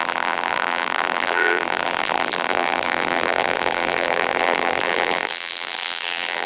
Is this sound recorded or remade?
remade